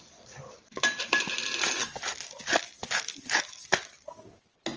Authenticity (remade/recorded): recorded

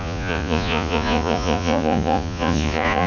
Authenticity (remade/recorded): remade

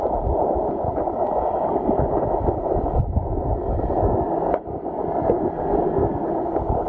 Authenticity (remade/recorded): recorded